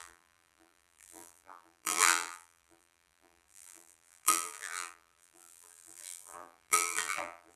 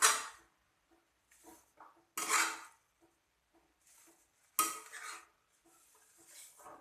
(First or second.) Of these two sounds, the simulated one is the first